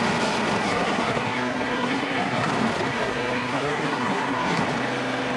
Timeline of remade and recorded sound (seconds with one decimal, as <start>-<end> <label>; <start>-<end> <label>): 0.0-0.6 recorded; 0.6-2.5 remade; 2.5-2.9 recorded; 2.9-4.6 remade; 4.6-5.4 recorded